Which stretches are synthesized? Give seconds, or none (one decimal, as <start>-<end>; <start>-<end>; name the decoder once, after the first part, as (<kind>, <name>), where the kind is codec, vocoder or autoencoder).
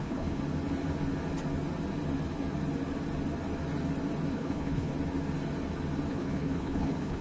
0.0-0.4 (codec, HILCodec); 4.3-4.9; 6.1-7.2